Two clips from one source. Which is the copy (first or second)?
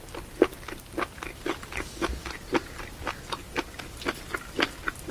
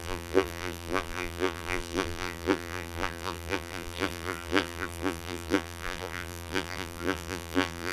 second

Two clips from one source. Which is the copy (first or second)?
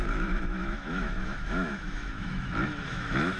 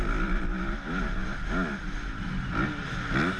first